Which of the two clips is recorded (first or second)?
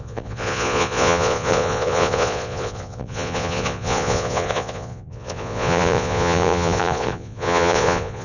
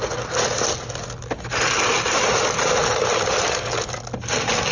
second